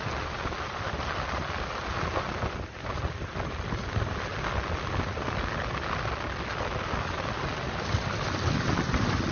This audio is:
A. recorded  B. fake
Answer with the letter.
A